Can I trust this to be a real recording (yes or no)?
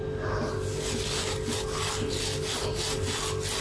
yes